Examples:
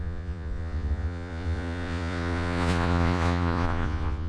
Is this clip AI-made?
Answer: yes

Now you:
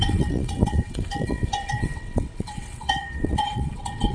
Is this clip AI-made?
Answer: yes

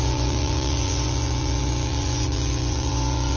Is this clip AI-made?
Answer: yes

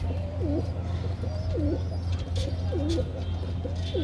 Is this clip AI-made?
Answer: no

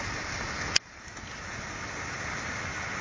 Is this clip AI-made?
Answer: no